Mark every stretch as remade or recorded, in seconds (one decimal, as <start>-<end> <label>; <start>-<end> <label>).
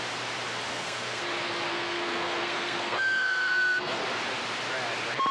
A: 0.0-0.7 recorded; 0.7-1.2 remade; 1.2-1.7 recorded; 1.7-4.0 remade; 4.0-5.3 recorded